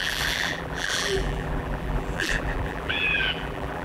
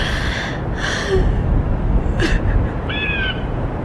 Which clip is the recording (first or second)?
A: second